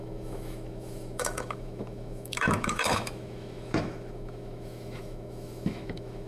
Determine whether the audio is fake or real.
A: fake